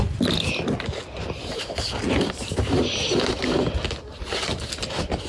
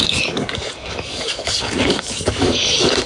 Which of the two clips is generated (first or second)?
second